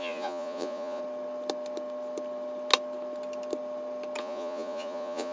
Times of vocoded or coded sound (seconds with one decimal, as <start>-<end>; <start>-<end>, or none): 0.0-1.0; 4.2-5.3